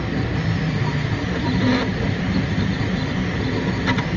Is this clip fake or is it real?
real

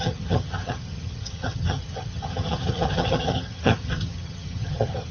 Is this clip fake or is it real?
fake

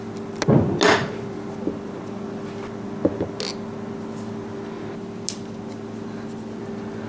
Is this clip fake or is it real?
real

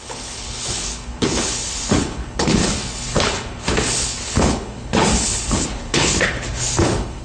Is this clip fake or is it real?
fake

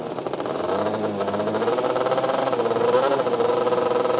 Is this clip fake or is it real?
real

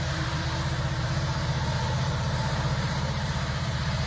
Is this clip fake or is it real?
fake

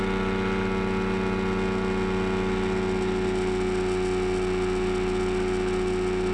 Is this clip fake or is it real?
real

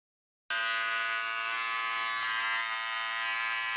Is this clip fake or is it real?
real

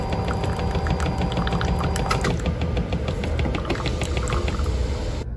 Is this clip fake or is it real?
real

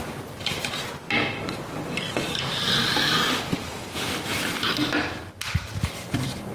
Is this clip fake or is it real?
real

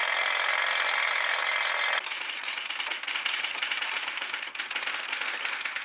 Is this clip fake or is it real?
real